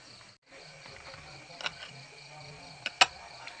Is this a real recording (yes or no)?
yes